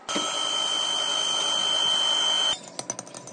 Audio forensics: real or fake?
real